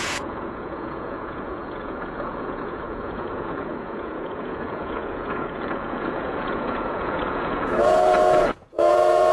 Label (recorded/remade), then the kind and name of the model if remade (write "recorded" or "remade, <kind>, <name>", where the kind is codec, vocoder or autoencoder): remade, vocoder, Vocos